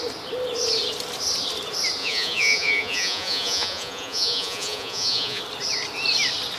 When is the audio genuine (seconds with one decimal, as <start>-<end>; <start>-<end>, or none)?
0.0-2.0; 5.4-6.6